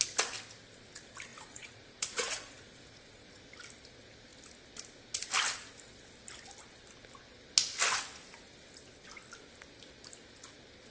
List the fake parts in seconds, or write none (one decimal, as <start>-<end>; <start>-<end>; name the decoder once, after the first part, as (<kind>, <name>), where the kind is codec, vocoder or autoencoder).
1.3-3.4 (vocoder, Vocos)